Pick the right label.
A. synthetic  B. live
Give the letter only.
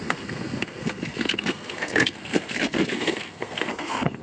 A